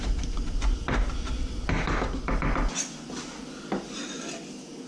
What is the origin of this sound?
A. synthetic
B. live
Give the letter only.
B